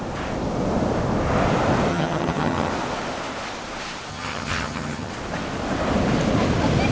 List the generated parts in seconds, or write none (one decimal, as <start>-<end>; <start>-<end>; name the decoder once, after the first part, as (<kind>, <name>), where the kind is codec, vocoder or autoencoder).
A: 1.9-2.7 (vocoder, HiFi-GAN); 4.1-5.1